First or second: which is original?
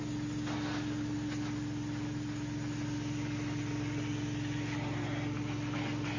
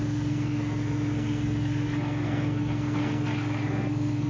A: first